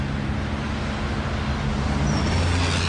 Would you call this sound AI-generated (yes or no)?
no